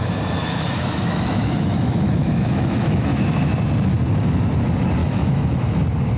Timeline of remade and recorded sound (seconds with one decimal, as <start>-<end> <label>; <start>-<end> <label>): 0.0-0.4 recorded; 0.4-3.5 remade; 3.5-5.0 recorded; 5.0-5.8 remade; 5.8-6.2 recorded